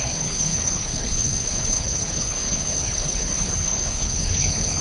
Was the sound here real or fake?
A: fake